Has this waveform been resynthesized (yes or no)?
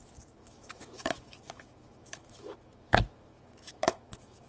yes